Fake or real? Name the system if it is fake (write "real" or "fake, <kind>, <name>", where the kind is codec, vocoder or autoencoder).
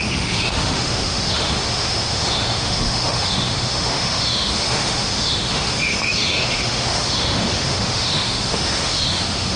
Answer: fake, autoencoder, DAC-VAE